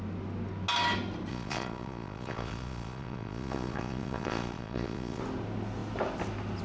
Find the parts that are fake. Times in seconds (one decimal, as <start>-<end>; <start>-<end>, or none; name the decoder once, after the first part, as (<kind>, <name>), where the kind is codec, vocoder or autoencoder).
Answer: 1.3-5.2 (vocoder, Vocos)